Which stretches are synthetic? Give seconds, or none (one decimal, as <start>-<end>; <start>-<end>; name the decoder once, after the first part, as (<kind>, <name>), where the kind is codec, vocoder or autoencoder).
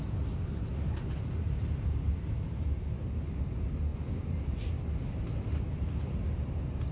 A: none